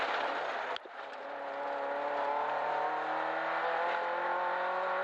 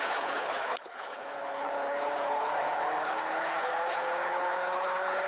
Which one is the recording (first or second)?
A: first